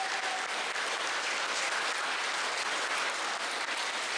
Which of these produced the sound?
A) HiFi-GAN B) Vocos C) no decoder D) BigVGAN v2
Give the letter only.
C